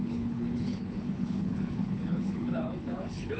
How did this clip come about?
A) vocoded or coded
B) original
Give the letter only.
A